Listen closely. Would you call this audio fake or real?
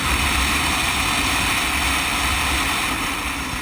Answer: real